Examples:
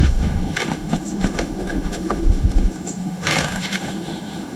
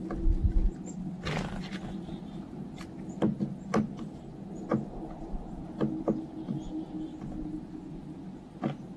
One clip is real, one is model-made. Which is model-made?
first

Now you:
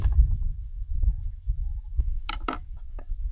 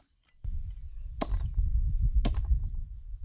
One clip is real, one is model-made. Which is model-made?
first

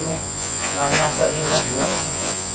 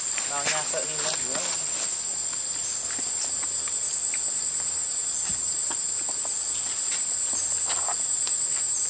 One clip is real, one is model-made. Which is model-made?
first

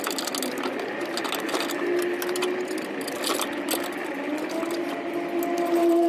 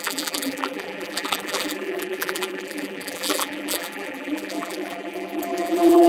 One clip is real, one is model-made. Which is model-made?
second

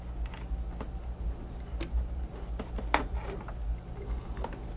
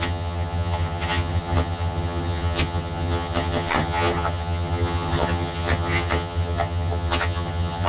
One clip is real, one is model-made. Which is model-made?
second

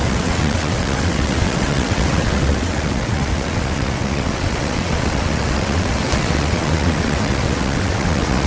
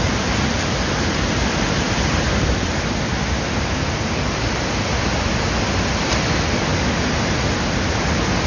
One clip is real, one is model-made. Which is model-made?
first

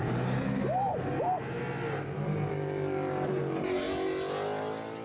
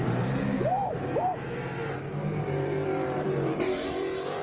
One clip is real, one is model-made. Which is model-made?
second